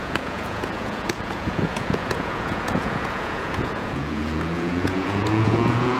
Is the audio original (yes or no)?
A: no